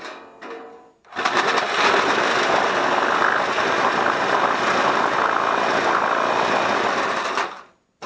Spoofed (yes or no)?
no